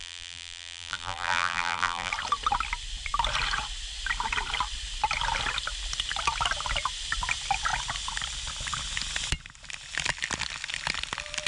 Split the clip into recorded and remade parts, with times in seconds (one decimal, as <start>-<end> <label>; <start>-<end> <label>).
0.0-2.1 remade; 2.1-11.5 recorded